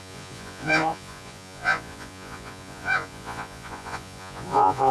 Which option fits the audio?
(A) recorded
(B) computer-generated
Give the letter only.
B